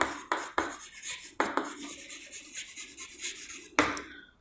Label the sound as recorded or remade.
recorded